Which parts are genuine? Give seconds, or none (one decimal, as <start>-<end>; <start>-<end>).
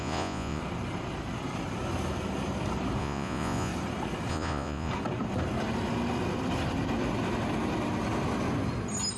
0.6-3.0; 3.7-4.3; 4.9-9.2